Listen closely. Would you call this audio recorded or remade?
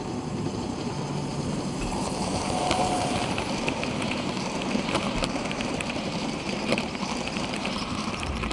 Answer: remade